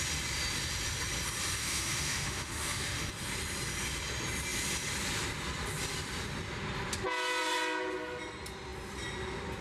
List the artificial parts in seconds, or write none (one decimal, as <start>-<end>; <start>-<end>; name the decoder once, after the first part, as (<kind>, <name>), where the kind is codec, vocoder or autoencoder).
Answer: 1.6-3.1 (autoencoder, DAC-VAE)